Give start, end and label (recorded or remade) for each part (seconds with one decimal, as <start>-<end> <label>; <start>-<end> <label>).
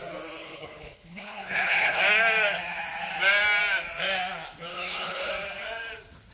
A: 0.0-0.4 recorded; 0.4-2.0 remade; 2.0-4.7 recorded; 4.7-5.3 remade; 5.3-6.3 recorded